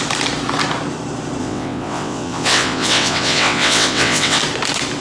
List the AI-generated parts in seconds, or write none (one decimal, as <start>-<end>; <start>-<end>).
1.4-4.4